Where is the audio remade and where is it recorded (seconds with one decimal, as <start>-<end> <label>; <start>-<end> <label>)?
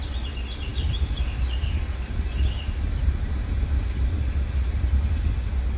0.0-5.8 recorded